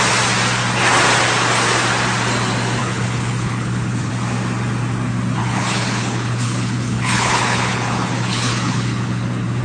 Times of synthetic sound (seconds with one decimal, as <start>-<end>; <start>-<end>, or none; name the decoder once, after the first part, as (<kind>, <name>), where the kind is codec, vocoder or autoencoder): 2.8-4.1 (codec, HILCodec); 5.4-9.6